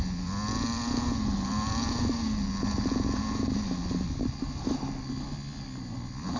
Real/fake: real